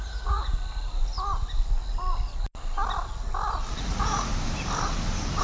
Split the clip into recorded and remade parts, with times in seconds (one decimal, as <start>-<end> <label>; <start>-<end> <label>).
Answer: 0.0-0.5 remade; 0.5-3.7 recorded; 3.7-4.3 remade; 4.3-5.4 recorded